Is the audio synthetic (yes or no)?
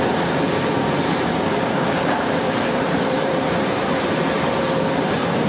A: yes